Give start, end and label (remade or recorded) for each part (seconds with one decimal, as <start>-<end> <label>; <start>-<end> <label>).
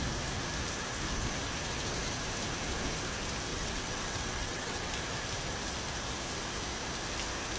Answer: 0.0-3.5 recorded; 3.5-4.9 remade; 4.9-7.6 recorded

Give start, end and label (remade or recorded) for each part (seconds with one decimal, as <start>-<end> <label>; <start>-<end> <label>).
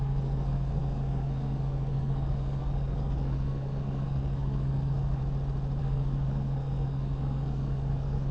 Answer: 0.0-5.2 remade; 5.2-5.8 recorded; 5.8-8.3 remade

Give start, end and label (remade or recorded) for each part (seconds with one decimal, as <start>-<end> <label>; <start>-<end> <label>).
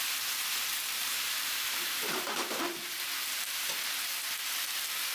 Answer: 0.0-0.7 recorded; 0.7-3.8 remade; 3.8-5.1 recorded